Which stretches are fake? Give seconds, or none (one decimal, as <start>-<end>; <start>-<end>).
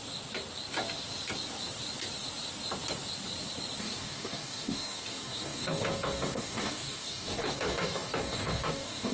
3.8-9.1